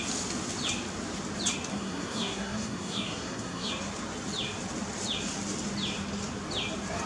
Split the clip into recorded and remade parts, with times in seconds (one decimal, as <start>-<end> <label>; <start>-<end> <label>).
0.0-1.7 recorded; 1.7-3.7 remade; 3.7-7.1 recorded